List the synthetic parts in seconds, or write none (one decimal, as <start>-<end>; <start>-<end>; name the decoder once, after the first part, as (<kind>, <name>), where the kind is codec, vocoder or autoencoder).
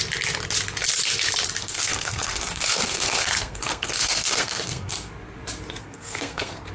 1.6-5.1 (codec, SNAC); 5.8-6.7